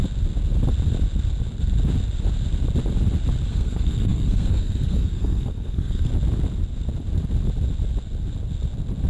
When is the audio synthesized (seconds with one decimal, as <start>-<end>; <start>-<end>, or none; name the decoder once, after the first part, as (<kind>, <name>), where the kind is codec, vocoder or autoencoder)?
3.5-6.1 (codec, SNAC)